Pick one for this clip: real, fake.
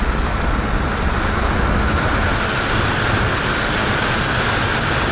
real